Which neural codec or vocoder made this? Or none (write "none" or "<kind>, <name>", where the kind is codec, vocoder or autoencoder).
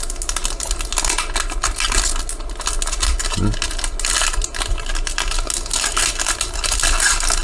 none